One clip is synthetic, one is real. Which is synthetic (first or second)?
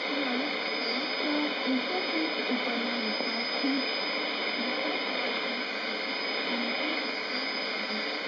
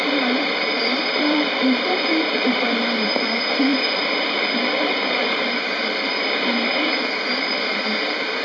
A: second